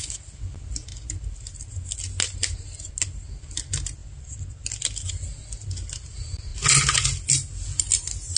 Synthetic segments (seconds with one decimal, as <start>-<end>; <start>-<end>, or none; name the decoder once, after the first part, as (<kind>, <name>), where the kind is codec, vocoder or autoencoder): none